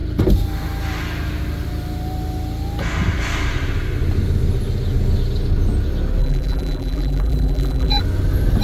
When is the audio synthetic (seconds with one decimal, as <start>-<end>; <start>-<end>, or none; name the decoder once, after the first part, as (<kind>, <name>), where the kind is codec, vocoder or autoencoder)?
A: 6.2-8.0 (vocoder, BigVGAN v2)